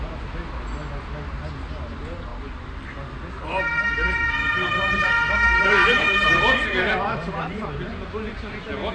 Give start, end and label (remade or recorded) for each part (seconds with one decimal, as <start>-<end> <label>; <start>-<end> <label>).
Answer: 0.0-8.9 recorded